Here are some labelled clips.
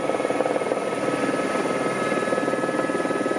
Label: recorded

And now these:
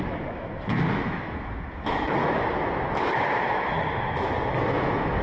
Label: remade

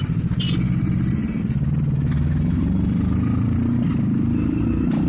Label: recorded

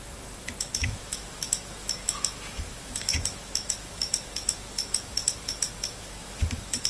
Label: remade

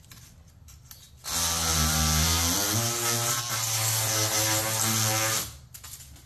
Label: recorded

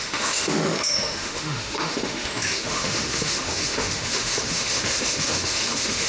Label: remade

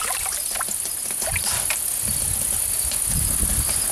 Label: recorded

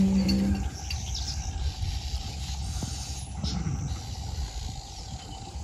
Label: recorded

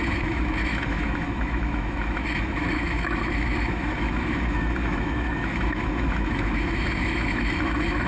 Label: remade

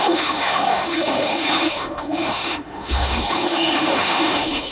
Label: remade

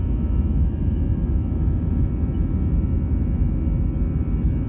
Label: recorded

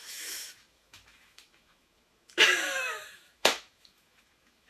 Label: remade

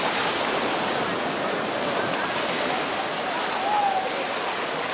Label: recorded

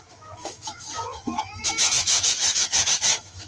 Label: remade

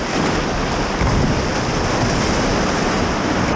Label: recorded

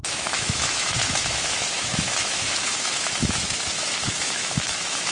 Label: remade